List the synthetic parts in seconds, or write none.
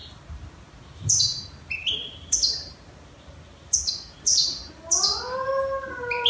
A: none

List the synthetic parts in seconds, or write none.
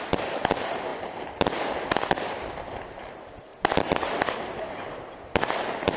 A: 0.0-6.0